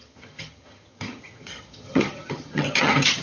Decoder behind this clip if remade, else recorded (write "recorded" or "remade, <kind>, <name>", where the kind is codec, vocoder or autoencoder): remade, vocoder, HiFi-GAN